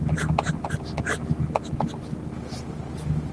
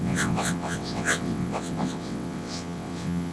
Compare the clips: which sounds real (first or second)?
first